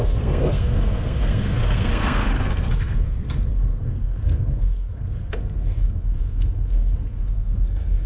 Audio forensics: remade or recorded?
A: remade